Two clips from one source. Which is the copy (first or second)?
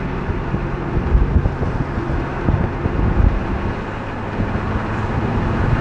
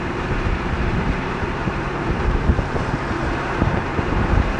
second